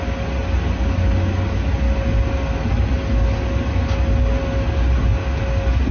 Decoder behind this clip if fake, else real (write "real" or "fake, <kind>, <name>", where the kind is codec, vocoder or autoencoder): real